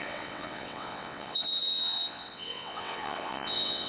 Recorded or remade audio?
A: remade